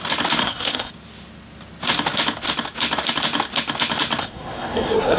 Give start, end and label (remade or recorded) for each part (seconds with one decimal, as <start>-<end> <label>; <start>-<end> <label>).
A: 0.0-0.4 recorded; 0.4-0.9 remade; 0.9-4.2 recorded; 4.2-5.2 remade